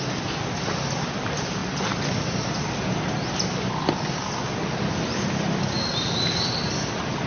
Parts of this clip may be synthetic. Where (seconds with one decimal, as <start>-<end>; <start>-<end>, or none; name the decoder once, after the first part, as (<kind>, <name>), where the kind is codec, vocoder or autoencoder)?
none